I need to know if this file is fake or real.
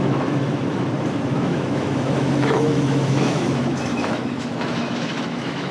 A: fake